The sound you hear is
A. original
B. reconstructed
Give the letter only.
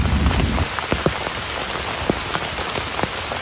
A